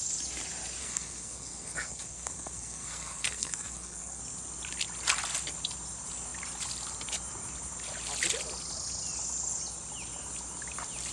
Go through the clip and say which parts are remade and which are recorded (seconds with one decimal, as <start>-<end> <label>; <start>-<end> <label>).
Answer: 0.0-0.8 recorded; 0.8-4.2 remade; 4.2-11.1 recorded